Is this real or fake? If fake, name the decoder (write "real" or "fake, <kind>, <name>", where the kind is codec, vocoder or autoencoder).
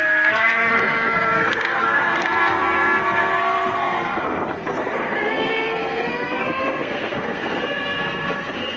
fake, codec, SNAC